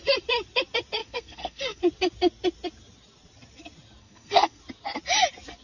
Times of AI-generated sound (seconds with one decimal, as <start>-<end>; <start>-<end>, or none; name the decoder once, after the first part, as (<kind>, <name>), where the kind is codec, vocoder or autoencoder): 1.0-1.8 (codec, SNAC); 4.0-4.6